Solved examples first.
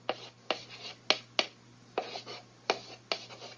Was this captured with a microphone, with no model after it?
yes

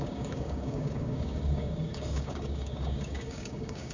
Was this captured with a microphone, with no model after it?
no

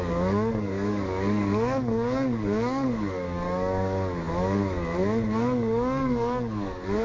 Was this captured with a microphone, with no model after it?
no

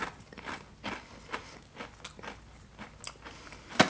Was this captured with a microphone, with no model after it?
yes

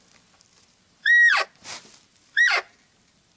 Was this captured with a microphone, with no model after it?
yes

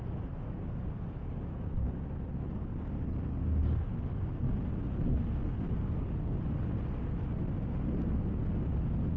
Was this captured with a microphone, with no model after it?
yes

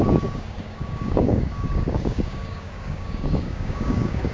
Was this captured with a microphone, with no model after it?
no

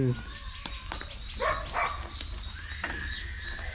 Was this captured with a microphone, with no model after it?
yes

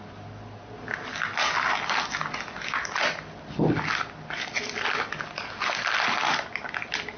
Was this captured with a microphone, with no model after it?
yes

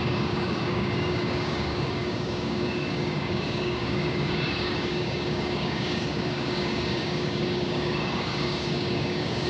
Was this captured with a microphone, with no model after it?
no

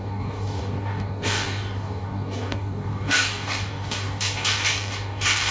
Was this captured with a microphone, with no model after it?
no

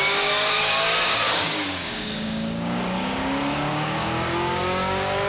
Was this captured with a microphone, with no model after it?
no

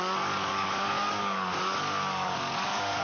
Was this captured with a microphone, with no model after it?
no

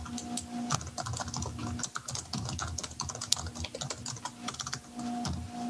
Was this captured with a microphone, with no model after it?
yes